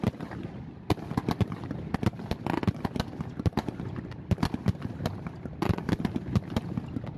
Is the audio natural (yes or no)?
yes